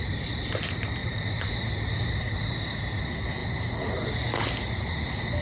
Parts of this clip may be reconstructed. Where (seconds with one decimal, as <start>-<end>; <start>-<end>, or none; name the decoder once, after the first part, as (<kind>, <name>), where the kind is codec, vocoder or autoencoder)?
1.0-2.4 (vocoder, BigVGAN v2)